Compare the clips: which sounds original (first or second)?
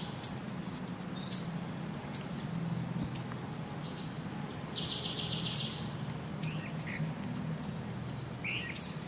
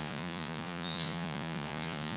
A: first